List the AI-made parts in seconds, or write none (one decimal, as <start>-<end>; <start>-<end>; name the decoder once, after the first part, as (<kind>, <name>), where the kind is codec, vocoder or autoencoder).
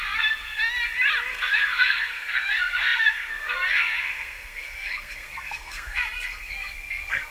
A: 0.0-0.6 (codec, SNAC); 1.3-7.3